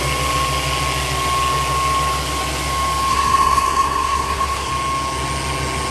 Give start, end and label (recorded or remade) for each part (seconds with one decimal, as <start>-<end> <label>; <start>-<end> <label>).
0.0-3.1 recorded; 3.1-4.7 remade; 4.7-5.9 recorded